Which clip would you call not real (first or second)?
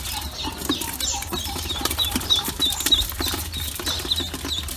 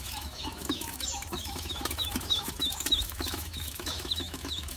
second